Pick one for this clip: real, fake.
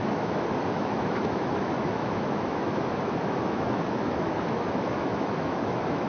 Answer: fake